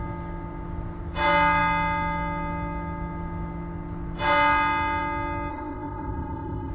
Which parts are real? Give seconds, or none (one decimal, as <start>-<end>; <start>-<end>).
0.0-5.5